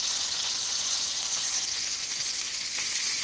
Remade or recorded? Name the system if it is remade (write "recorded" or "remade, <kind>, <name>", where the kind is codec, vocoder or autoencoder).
remade, vocoder, Vocos